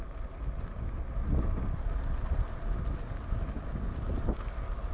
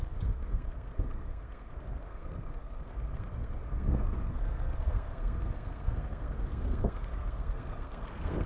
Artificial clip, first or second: second